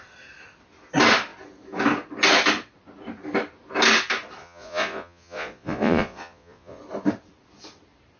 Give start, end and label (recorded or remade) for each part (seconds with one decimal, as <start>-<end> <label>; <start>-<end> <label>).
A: 0.0-4.4 recorded; 4.4-6.8 remade; 6.8-8.2 recorded